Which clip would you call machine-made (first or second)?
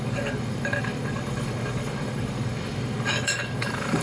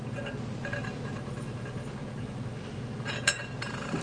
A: first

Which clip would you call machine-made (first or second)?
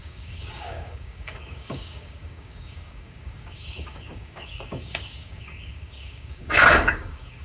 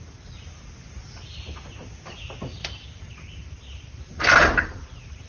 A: first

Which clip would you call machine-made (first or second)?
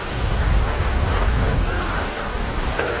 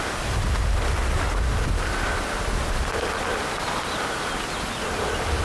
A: first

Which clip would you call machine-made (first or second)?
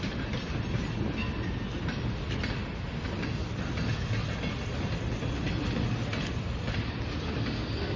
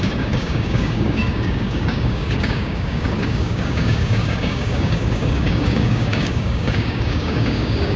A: second